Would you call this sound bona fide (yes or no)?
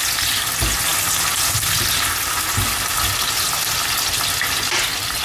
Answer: yes